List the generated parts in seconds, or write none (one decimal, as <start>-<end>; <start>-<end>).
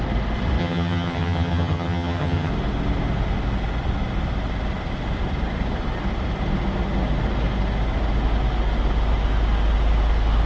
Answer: 0.6-2.5